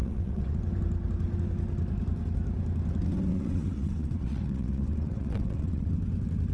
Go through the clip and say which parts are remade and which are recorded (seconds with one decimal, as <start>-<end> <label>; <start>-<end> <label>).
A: 0.0-0.6 remade; 0.6-3.3 recorded; 3.3-5.9 remade; 5.9-6.5 recorded